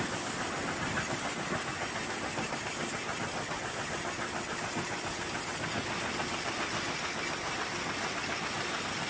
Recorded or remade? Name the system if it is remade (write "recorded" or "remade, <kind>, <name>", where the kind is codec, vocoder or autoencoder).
recorded